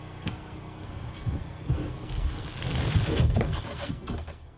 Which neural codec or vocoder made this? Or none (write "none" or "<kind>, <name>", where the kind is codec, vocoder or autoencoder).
codec, SNAC